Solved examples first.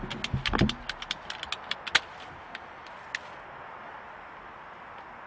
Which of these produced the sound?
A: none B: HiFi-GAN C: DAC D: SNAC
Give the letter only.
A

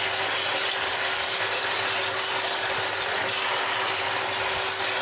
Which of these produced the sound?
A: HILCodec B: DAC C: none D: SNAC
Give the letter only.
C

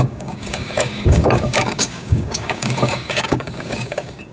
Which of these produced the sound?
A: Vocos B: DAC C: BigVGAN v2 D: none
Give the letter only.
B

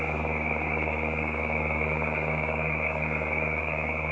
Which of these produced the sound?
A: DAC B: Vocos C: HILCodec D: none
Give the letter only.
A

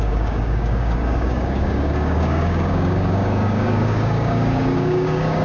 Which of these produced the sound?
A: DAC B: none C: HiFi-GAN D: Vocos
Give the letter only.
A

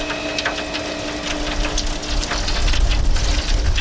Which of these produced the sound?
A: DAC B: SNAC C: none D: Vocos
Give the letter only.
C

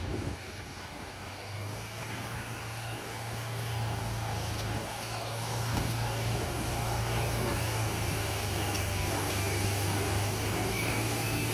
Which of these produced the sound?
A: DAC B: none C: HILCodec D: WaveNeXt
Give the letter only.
A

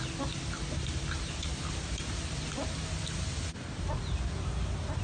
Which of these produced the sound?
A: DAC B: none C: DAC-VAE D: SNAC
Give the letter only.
B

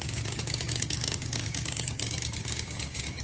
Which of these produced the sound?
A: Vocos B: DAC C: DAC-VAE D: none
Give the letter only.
B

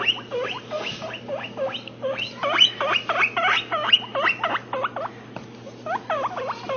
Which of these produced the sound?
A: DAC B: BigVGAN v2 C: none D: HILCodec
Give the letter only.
C